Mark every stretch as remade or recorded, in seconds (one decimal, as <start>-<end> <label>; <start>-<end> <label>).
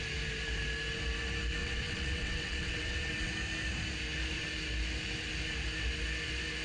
0.0-1.6 recorded; 1.6-3.3 remade; 3.3-6.6 recorded